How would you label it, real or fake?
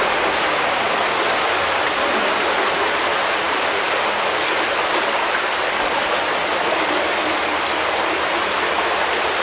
real